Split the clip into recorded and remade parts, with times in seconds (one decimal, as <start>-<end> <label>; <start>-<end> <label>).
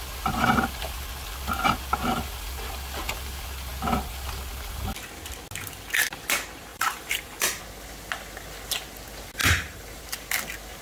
0.0-6.7 recorded; 6.7-7.6 remade; 7.6-9.4 recorded; 9.4-10.0 remade; 10.0-10.8 recorded